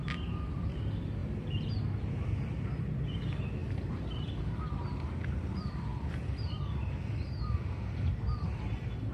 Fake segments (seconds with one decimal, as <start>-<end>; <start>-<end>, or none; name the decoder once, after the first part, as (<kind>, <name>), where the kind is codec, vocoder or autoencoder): none